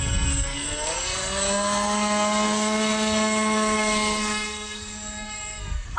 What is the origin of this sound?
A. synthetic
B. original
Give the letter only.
A